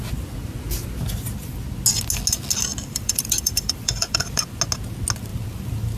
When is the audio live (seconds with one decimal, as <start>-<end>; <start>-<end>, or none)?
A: 0.0-2.7; 4.5-5.3